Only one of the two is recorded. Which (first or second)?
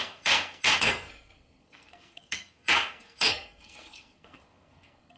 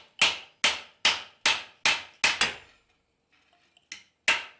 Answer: second